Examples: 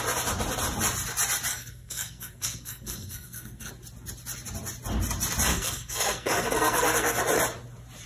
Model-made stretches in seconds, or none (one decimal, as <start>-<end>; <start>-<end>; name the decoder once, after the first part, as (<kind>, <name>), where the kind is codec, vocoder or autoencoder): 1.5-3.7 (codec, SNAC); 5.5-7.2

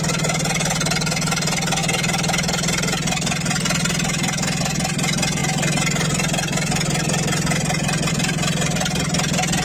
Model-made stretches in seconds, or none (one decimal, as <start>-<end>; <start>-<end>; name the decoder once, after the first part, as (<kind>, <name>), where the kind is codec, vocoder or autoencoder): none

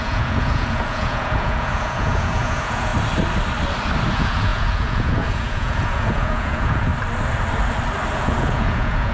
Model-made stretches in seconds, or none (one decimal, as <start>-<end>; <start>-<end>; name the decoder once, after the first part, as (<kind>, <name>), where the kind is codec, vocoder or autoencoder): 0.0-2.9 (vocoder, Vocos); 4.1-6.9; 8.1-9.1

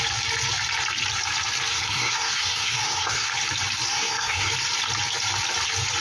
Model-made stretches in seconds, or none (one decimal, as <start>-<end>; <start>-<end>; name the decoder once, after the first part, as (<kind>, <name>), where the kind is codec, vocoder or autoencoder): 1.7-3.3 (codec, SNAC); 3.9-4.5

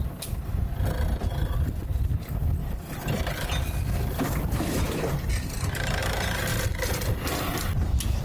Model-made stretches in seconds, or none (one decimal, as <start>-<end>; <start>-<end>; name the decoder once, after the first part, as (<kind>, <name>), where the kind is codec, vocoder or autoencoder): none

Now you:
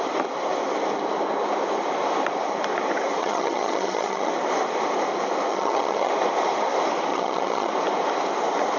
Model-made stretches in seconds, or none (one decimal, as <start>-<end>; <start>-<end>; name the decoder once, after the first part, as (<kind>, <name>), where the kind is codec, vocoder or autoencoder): 3.2-4.3 (vocoder, HiFi-GAN); 5.5-6.1; 7.1-7.7

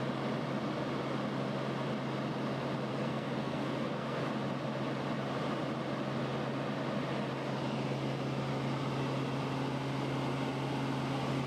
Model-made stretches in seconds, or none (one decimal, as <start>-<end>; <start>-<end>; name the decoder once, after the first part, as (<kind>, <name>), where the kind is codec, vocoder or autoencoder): 2.9-4.3 (codec, SNAC)

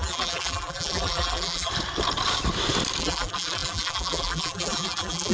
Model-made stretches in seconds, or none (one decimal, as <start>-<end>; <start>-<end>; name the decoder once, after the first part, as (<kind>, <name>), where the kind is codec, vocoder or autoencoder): 0.0-1.7 (vocoder, BigVGAN v2); 3.0-5.3